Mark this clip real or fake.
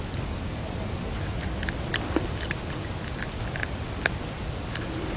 real